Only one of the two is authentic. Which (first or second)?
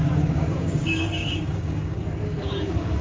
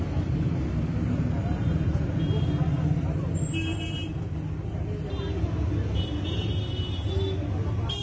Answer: second